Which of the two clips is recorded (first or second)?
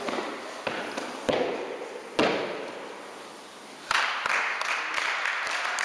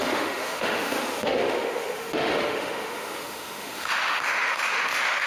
first